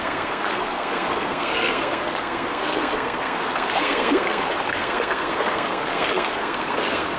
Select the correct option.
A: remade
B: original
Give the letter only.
A